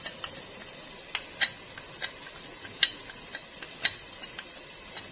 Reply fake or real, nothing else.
real